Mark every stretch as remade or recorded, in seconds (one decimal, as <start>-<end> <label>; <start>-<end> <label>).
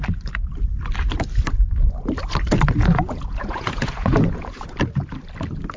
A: 0.0-2.8 recorded; 2.8-4.6 remade; 4.6-5.8 recorded